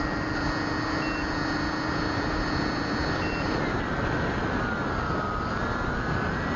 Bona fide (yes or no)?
yes